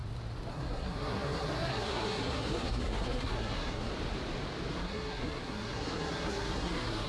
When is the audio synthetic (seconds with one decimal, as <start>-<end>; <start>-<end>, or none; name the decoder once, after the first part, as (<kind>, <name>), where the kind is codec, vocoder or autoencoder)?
0.5-3.9 (codec, SNAC); 4.7-7.1